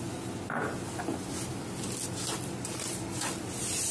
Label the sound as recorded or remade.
recorded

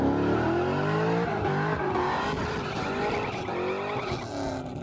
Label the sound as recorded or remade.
recorded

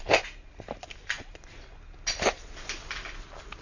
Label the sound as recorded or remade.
recorded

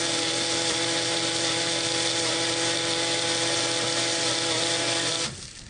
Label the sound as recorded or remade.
recorded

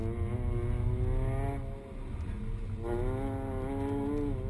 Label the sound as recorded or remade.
recorded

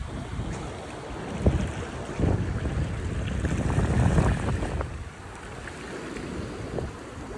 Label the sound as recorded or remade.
recorded